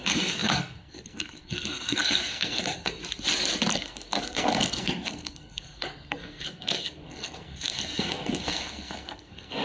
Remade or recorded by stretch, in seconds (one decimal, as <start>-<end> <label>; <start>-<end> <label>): 0.0-3.0 remade; 3.0-3.7 recorded; 3.7-9.6 remade